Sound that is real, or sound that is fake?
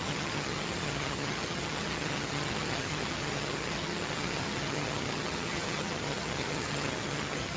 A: fake